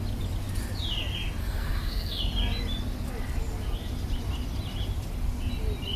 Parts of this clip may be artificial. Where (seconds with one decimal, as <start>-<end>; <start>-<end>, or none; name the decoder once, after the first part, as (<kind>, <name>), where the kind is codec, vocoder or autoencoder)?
1.4-2.2 (codec, SNAC)